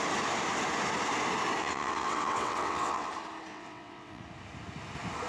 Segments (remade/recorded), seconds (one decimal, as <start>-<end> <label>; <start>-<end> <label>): 0.0-1.6 recorded; 1.6-3.1 remade; 3.1-3.5 recorded; 3.5-4.2 remade; 4.2-5.3 recorded